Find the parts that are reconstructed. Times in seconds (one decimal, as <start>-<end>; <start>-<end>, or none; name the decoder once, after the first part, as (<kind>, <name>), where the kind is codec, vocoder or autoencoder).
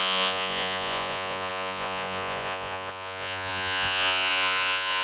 0.0-5.0 (vocoder, Vocos)